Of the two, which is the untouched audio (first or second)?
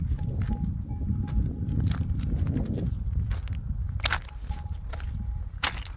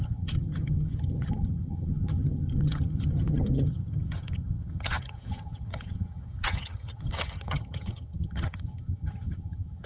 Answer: first